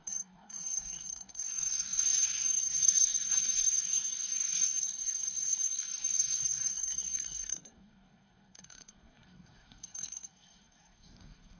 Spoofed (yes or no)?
yes